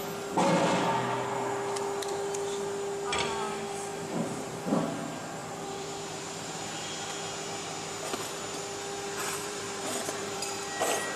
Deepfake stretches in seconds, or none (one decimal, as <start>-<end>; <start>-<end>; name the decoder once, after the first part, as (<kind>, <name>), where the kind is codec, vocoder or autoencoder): 3.9-4.8 (vocoder, BigVGAN v2); 5.4-6.7; 9.2-10.6